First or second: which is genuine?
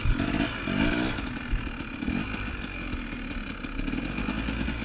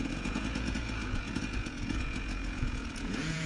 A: first